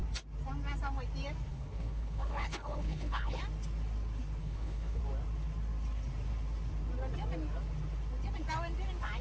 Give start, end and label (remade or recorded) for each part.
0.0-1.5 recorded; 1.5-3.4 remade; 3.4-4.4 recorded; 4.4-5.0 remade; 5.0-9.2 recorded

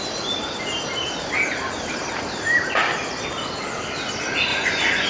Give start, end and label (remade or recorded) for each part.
0.0-4.5 recorded; 4.5-5.1 remade

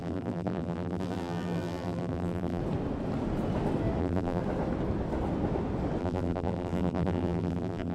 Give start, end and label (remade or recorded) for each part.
0.0-2.6 remade; 2.6-4.0 recorded; 4.0-4.4 remade; 4.4-6.0 recorded; 6.0-7.9 remade

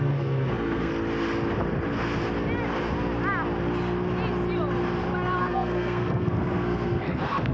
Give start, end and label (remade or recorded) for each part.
0.0-0.9 remade; 0.9-5.4 recorded; 5.4-7.5 remade